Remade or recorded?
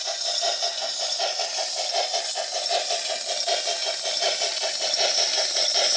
recorded